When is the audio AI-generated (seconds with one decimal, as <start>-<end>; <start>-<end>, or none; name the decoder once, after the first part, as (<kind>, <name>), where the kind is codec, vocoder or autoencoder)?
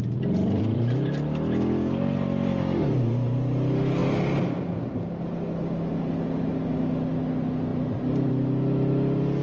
0.0-3.0 (vocoder, BigVGAN v2); 7.7-8.3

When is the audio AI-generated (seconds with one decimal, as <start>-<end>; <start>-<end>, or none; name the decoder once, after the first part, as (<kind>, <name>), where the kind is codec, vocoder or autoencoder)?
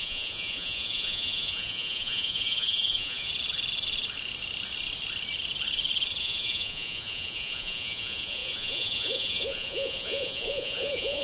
0.0-3.3 (vocoder, Vocos); 6.2-11.2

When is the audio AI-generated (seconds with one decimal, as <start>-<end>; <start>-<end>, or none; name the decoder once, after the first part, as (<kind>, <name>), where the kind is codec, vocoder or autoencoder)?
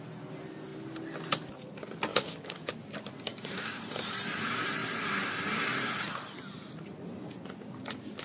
2.1-2.7 (codec, DAC); 3.3-3.8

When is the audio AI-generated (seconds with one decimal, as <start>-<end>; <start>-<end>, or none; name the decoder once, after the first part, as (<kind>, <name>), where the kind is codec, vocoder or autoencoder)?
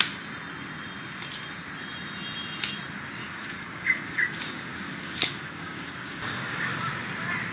3.2-6.8 (codec, DAC)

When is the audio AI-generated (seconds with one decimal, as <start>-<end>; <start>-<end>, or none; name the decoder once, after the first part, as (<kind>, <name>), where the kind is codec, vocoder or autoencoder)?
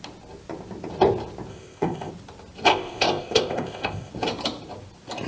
1.5-2.1 (codec, ZipCodec); 2.7-4.1